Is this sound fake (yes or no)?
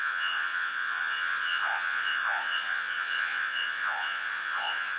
yes